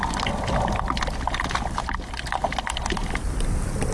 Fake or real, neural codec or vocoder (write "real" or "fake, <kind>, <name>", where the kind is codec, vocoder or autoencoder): real